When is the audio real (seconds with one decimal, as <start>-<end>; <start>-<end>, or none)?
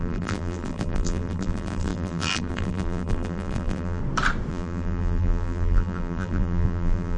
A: 4.0-4.5